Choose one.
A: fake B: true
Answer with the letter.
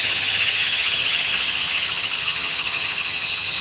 A